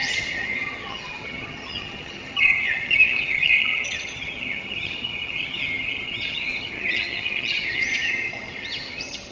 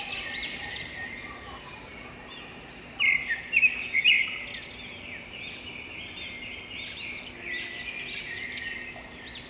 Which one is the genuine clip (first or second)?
second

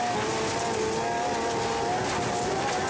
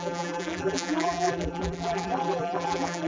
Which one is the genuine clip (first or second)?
first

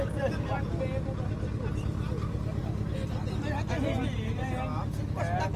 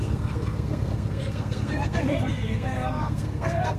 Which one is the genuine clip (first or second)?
first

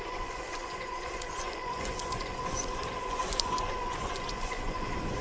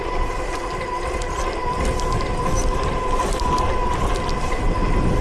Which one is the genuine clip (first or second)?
second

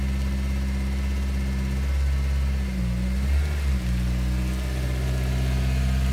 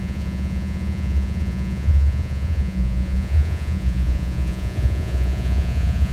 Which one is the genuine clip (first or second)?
first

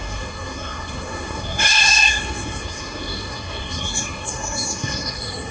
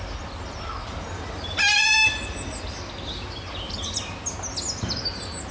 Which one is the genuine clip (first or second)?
second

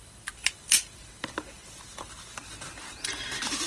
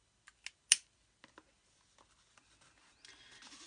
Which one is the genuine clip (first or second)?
second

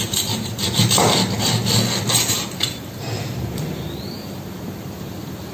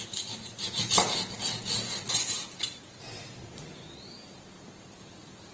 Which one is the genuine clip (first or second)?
second